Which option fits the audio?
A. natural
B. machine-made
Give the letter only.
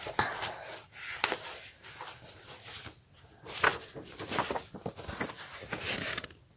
A